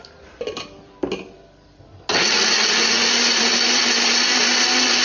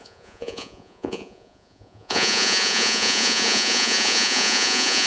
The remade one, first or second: second